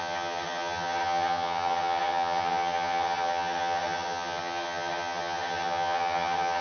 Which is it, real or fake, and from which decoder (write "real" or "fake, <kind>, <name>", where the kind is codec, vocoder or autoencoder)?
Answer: fake, vocoder, HiFi-GAN